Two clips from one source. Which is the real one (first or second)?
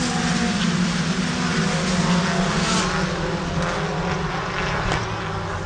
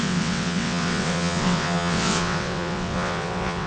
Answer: first